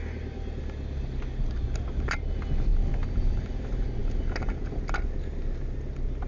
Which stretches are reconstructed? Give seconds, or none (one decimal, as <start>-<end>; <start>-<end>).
none